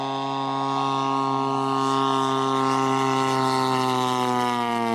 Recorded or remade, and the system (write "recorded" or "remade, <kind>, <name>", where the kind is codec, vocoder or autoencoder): recorded